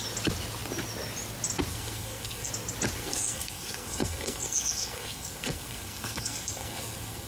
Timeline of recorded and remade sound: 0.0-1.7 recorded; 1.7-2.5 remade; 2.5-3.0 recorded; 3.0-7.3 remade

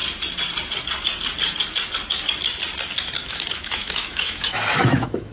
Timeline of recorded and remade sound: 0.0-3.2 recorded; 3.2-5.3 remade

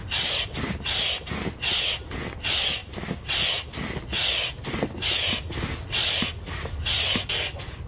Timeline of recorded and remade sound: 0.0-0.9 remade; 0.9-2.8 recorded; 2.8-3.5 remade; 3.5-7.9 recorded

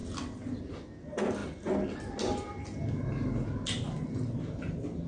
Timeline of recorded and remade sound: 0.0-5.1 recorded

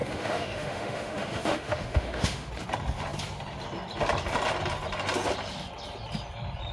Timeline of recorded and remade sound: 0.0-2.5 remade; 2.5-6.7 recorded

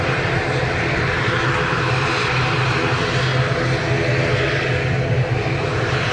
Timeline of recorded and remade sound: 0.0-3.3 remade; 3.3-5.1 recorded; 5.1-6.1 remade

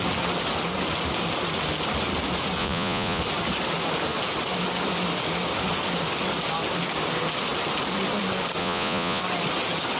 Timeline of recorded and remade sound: 0.0-2.6 recorded; 2.6-3.2 remade; 3.2-8.6 recorded; 8.6-9.2 remade; 9.2-10.0 recorded